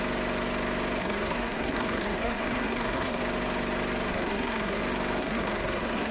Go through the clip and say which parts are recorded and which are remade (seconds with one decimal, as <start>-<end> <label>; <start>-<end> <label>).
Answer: 0.0-1.0 recorded; 1.0-3.2 remade; 3.2-4.1 recorded; 4.1-4.8 remade; 4.8-5.2 recorded; 5.2-6.1 remade